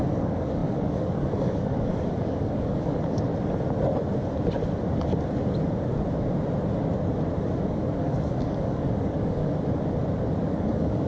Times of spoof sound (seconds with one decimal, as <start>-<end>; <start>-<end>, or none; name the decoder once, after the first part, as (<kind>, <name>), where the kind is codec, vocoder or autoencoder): 0.0-3.3 (codec, DAC); 7.4-9.4; 10.4-11.1